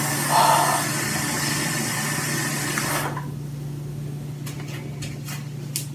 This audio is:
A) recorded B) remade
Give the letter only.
A